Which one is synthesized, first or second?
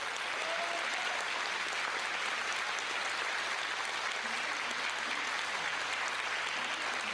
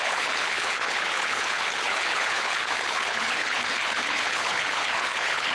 second